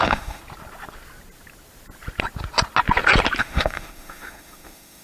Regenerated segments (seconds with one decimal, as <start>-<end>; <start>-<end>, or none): 0.0-0.4; 3.4-5.0

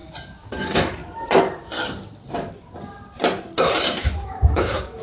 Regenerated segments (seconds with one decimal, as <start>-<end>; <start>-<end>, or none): 0.6-1.0; 4.0-5.0

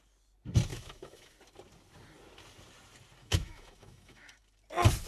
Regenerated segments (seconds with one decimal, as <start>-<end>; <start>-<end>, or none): 0.7-1.3; 3.2-4.4